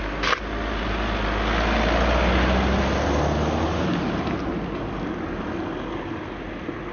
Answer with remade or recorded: recorded